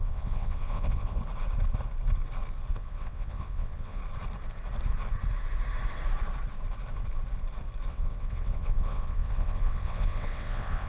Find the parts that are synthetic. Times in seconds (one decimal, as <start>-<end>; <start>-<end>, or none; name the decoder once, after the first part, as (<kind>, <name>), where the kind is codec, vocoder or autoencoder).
0.0-1.2 (vocoder, WaveNeXt); 2.7-4.0; 7.9-10.9